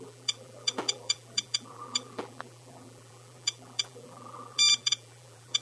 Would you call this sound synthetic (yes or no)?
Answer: yes